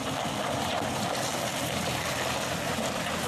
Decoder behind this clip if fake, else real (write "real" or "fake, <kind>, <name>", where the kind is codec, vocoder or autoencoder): real